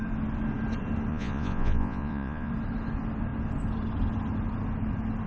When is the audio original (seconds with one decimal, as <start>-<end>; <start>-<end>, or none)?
0.0-1.1; 2.5-5.3